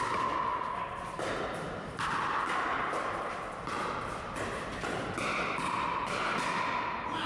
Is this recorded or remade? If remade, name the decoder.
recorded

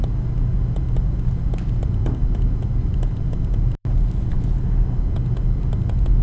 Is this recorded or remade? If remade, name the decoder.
recorded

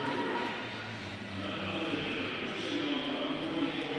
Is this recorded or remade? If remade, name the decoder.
recorded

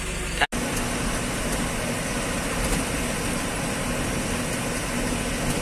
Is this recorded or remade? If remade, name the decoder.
recorded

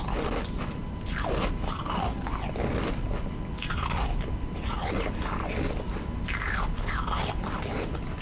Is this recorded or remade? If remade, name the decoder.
recorded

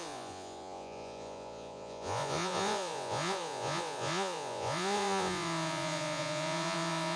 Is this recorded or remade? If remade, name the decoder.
remade, vocoder, Vocos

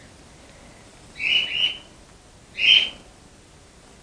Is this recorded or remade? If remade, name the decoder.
recorded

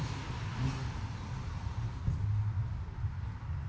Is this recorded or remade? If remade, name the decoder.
recorded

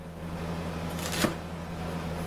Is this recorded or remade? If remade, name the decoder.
recorded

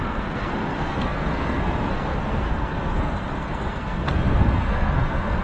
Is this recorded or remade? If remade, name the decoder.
remade, codec, SNAC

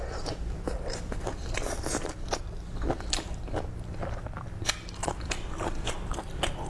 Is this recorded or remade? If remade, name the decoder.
remade, vocoder, BigVGAN v2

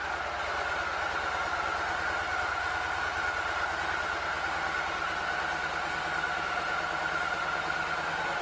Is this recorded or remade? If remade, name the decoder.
recorded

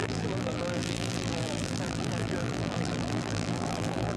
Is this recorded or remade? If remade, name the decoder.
remade, vocoder, BigVGAN v2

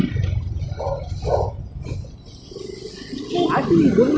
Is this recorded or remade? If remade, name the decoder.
recorded